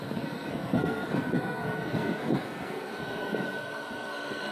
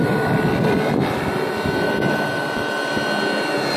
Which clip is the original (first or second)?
second